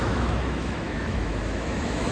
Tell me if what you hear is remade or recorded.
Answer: remade